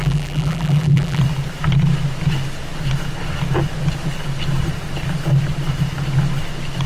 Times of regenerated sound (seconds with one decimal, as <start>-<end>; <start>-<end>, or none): 0.0-1.2